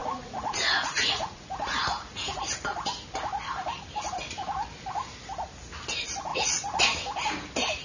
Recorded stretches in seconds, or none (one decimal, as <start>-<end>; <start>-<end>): 2.4-6.3; 6.8-7.8